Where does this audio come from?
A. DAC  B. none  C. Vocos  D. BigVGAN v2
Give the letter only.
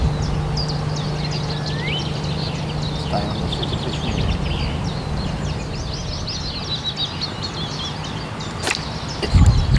B